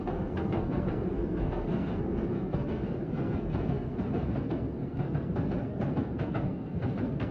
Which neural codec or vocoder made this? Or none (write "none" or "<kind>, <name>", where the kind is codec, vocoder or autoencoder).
codec, SNAC